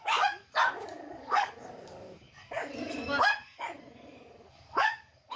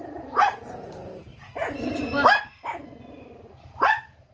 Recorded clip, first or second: second